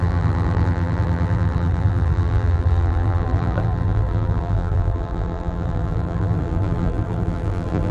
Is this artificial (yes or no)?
yes